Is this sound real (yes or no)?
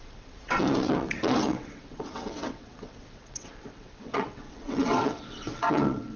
no